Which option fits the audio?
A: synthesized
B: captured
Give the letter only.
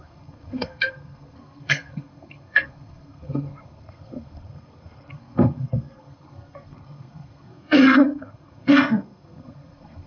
A